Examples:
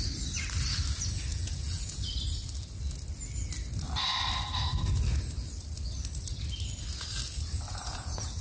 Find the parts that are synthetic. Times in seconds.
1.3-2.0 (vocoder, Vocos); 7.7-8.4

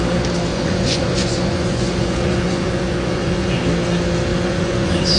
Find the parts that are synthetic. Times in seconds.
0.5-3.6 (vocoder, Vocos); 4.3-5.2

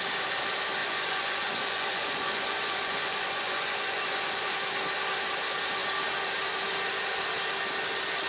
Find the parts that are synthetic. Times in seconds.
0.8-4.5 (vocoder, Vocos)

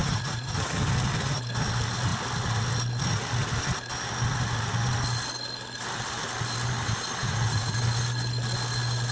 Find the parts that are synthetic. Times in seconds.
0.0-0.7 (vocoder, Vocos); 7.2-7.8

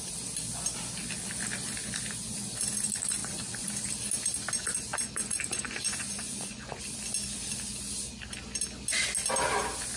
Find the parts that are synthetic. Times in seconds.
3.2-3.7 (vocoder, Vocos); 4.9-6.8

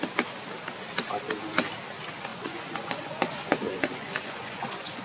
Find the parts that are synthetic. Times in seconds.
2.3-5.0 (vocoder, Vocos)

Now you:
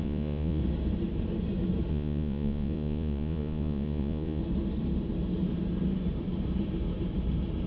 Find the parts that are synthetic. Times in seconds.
0.0-0.6 (vocoder, Vocos); 1.9-4.4

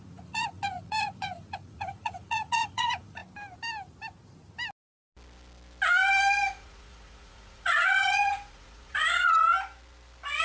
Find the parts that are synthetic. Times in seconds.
0.0-3.2 (vocoder, Vocos); 6.5-9.4